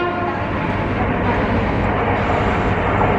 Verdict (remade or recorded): recorded